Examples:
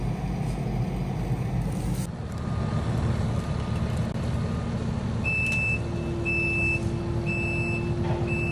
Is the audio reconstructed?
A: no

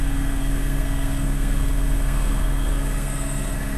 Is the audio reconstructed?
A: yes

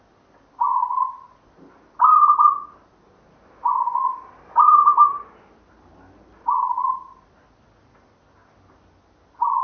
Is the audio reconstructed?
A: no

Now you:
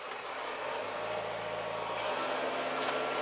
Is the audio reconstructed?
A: no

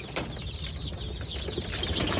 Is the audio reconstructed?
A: no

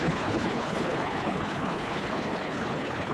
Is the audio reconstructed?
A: yes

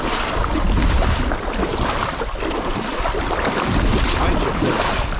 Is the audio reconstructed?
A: no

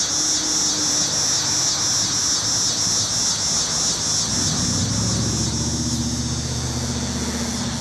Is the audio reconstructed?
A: no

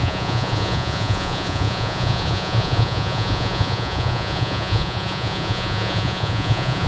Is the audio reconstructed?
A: yes